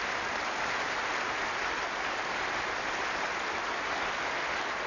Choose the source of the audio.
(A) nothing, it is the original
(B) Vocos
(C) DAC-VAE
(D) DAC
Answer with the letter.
A